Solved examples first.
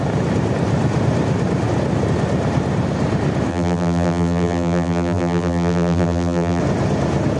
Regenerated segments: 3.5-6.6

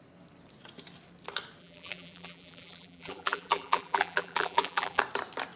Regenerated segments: 1.6-5.0

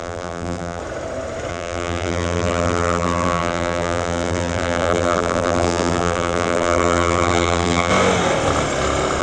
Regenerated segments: 0.0-0.8; 1.5-7.9

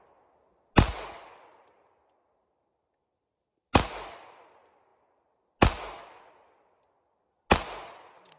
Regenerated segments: none

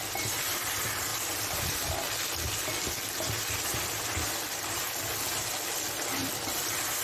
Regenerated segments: 6.2-7.0

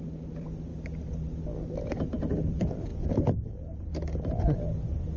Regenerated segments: 0.0-0.7; 2.5-2.9; 3.5-5.2

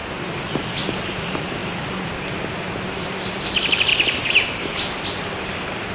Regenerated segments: 3.9-4.5